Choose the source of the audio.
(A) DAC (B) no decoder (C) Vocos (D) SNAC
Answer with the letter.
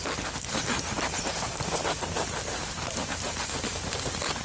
B